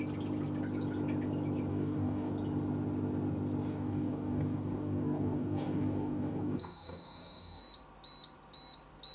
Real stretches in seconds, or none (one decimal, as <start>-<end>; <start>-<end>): 0.0-1.7; 2.3-3.7; 7.6-9.1